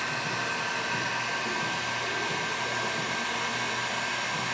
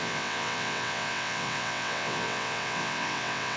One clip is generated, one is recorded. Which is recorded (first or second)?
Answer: first